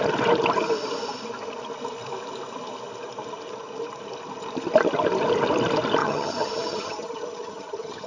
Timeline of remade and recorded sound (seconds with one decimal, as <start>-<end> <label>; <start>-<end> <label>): 0.0-6.0 recorded; 6.0-8.1 remade

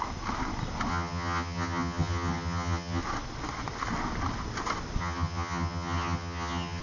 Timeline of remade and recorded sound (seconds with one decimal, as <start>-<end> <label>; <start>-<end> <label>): 0.0-0.9 recorded; 0.9-3.0 remade; 3.0-5.0 recorded; 5.0-6.8 remade

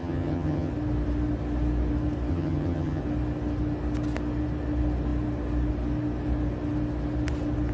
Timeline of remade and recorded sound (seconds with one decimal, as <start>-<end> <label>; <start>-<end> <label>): 0.0-0.7 remade; 0.7-2.3 recorded; 2.3-3.0 remade; 3.0-7.7 recorded

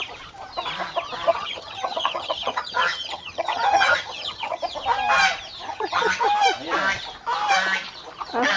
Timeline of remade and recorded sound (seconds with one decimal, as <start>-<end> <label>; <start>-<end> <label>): 0.0-1.3 recorded; 1.3-4.6 remade; 4.6-5.7 recorded; 5.7-6.2 remade; 6.2-8.6 recorded

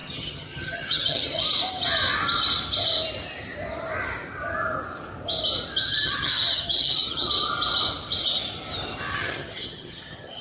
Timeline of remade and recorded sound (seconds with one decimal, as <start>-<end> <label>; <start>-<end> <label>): 0.0-1.4 remade; 1.4-5.8 recorded; 5.8-7.3 remade; 7.3-9.1 recorded; 9.1-10.4 remade

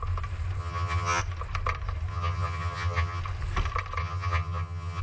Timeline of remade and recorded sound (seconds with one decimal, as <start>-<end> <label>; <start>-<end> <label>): 0.0-0.6 recorded; 0.6-1.2 remade; 1.2-2.1 recorded; 2.1-3.2 remade; 3.2-4.0 recorded; 4.0-5.0 remade